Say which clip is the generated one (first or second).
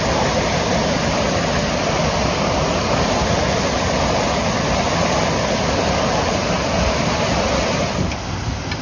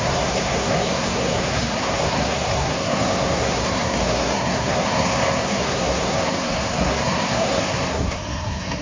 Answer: second